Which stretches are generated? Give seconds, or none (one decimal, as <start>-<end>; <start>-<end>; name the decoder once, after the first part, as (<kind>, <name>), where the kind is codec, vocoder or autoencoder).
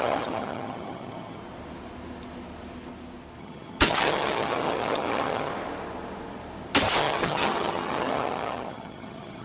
0.0-1.4 (vocoder, HiFi-GAN); 3.4-5.5; 7.0-9.4